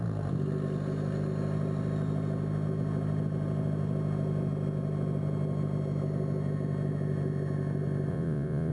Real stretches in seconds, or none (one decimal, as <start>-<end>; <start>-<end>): 0.0-8.1